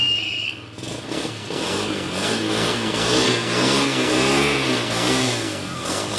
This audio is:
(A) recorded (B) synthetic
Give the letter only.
B